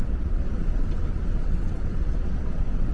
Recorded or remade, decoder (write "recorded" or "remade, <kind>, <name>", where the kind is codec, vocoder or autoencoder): remade, vocoder, WaveNeXt